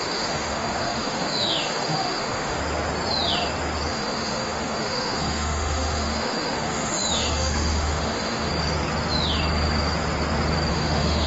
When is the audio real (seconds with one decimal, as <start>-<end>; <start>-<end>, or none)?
2.6-3.9; 8.5-10.7